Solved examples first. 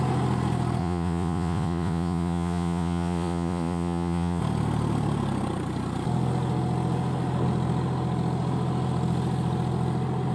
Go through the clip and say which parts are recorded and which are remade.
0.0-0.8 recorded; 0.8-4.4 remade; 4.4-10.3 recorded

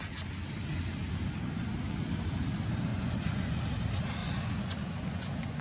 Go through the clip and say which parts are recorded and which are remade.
0.0-2.9 recorded; 2.9-3.6 remade; 3.6-4.2 recorded; 4.2-5.6 remade

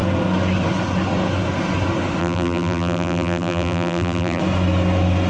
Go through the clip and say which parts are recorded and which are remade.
0.0-2.2 recorded; 2.2-4.4 remade; 4.4-5.3 recorded

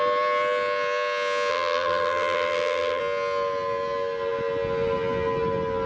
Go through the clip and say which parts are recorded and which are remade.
0.0-1.5 recorded; 1.5-3.0 remade; 3.0-5.9 recorded

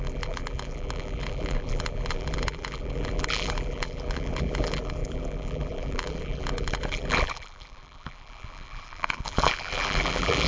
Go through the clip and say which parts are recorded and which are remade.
0.0-10.5 remade

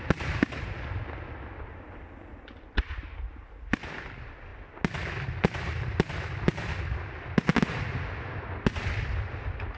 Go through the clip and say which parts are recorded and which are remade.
0.0-9.8 recorded

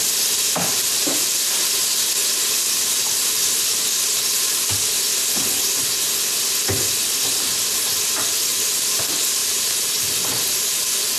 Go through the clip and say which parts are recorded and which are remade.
0.0-0.7 recorded; 0.7-1.6 remade; 1.6-8.5 recorded; 8.5-9.0 remade; 9.0-9.4 recorded; 9.4-10.0 remade; 10.0-11.2 recorded

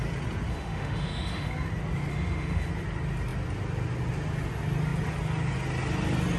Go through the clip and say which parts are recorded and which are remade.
0.0-0.5 recorded; 0.5-1.5 remade; 1.5-2.1 recorded; 2.1-2.7 remade; 2.7-6.4 recorded